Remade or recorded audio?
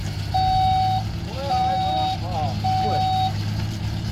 recorded